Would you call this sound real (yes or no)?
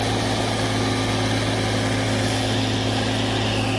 yes